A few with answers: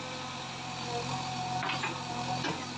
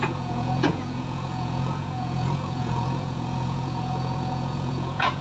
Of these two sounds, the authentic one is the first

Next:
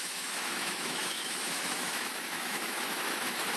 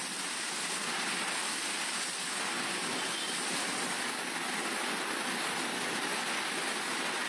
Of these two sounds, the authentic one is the second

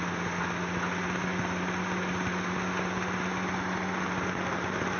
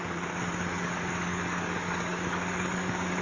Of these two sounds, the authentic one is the first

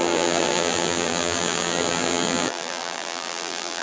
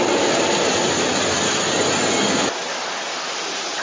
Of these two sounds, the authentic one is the second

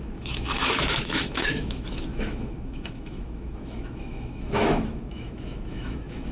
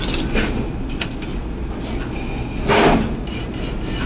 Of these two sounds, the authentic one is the second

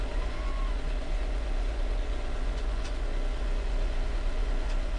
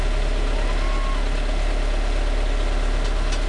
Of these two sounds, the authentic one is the second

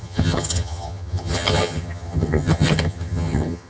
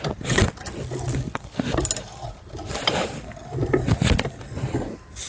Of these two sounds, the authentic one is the second